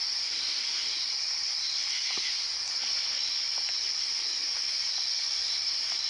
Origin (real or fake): real